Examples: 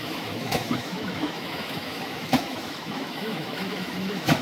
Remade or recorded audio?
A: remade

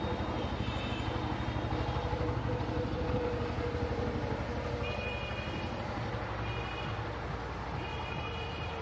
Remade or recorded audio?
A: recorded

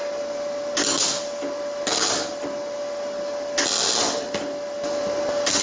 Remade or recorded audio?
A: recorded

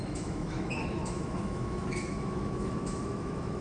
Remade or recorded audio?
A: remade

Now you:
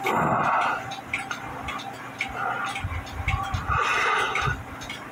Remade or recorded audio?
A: recorded